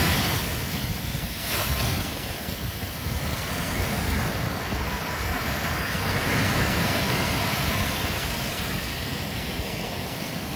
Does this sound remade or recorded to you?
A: remade